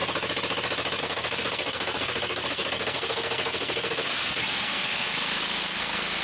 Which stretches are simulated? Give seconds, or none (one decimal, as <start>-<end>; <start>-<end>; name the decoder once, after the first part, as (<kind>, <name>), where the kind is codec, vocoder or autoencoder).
1.0-6.2 (codec, SNAC)